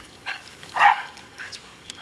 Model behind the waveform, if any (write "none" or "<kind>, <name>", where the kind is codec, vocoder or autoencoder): codec, DAC